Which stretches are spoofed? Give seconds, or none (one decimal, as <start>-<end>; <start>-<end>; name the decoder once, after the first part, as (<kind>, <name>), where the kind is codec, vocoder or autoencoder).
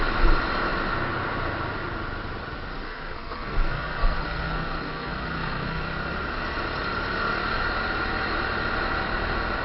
2.7-5.8 (codec, SNAC)